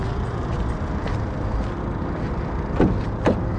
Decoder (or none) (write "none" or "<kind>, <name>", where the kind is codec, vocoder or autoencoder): vocoder, BigVGAN v2